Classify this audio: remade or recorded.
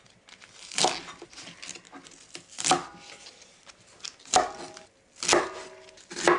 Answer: recorded